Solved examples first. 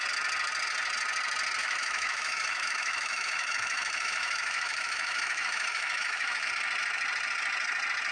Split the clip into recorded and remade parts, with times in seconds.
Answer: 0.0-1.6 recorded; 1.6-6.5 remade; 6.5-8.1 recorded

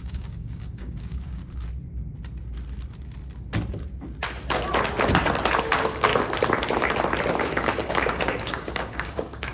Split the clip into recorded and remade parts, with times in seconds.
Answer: 0.0-1.4 remade; 1.4-5.6 recorded; 5.6-6.1 remade; 6.1-7.4 recorded; 7.4-9.5 remade